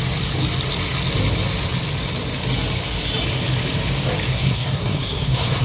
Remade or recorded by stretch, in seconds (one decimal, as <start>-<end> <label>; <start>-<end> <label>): 0.0-4.3 recorded; 4.3-5.6 remade